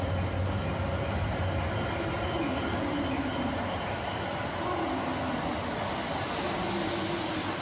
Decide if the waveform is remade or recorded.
recorded